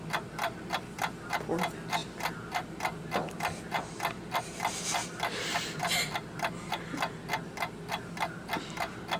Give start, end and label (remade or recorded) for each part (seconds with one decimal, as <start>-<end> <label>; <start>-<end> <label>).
0.0-9.2 recorded